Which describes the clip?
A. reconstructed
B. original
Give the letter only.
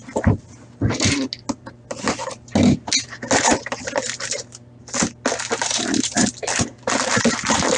B